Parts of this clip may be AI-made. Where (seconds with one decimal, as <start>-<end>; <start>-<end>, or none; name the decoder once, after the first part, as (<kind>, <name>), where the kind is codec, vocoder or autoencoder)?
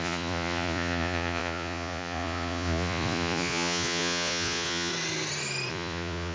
0.0-4.9 (vocoder, Vocos); 5.7-6.3